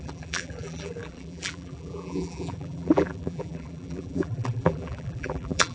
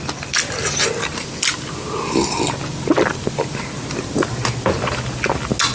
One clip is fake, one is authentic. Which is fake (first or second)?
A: first